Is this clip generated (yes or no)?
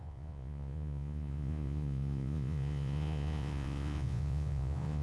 yes